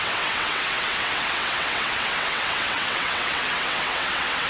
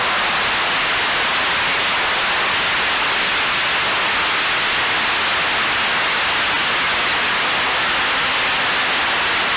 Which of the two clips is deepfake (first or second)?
first